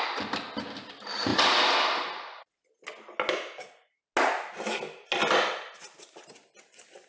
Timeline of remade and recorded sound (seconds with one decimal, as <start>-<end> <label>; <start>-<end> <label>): 0.0-7.1 recorded